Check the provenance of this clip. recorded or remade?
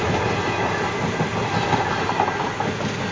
recorded